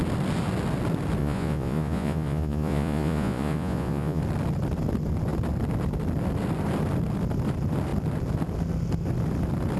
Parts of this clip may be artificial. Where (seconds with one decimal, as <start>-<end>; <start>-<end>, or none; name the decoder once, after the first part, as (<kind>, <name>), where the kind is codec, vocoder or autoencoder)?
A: 1.2-4.2 (vocoder, Vocos)